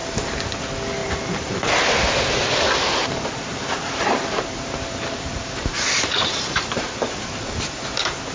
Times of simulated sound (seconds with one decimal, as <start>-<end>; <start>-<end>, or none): 1.0-1.7; 3.0-7.2

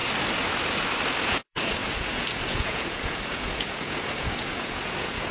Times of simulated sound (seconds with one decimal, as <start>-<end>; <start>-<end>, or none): 1.3-5.3

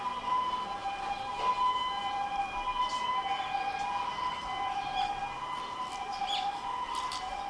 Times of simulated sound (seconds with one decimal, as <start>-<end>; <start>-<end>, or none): none

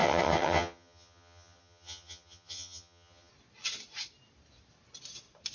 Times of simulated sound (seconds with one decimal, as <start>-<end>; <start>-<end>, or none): 0.0-3.3